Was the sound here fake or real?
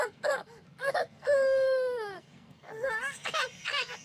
fake